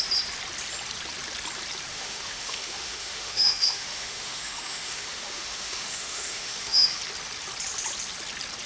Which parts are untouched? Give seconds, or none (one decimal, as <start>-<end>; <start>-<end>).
0.0-1.9; 7.0-8.7